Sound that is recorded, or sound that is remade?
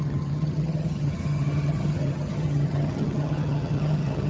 remade